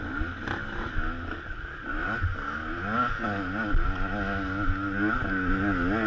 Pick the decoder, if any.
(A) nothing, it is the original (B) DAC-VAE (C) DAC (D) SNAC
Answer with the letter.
A